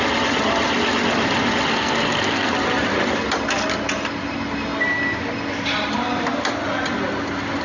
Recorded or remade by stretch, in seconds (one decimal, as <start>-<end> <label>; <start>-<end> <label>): 0.0-1.7 recorded; 1.7-2.5 remade; 2.5-7.6 recorded